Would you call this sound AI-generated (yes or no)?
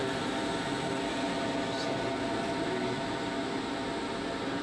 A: no